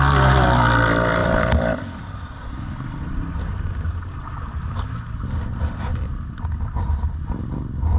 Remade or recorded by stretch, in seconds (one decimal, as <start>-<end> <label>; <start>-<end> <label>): 0.0-1.2 recorded; 1.2-4.4 remade; 4.4-5.9 recorded; 5.9-7.1 remade; 7.1-8.0 recorded